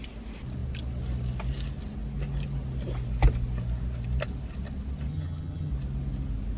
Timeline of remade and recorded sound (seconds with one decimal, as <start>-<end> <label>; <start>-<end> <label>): 0.0-5.1 recorded; 5.1-5.7 remade; 5.7-6.6 recorded